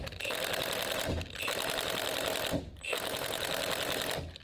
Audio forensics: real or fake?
real